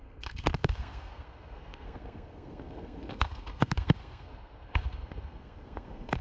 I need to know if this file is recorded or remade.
remade